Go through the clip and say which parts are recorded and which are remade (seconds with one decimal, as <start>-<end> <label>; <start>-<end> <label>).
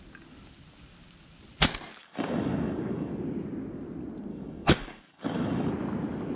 0.0-2.0 recorded; 2.0-3.1 remade; 3.1-4.3 recorded; 4.3-5.7 remade; 5.7-6.3 recorded